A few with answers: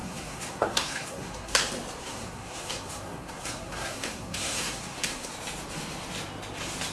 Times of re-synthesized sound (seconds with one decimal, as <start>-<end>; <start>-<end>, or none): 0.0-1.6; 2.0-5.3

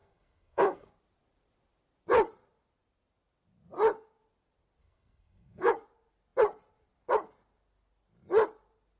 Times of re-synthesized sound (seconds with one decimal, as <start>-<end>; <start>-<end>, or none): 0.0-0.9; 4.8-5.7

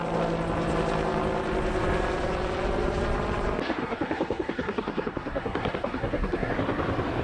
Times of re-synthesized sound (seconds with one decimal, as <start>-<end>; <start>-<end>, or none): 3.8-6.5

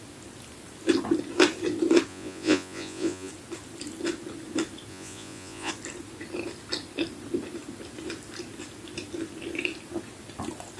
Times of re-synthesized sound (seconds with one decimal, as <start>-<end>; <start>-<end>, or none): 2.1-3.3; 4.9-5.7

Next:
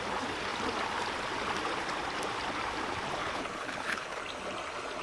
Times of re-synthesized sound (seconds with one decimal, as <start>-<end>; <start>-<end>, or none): 3.2-4.2

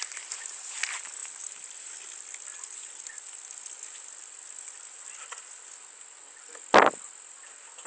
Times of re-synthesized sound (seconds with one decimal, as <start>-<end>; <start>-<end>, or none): none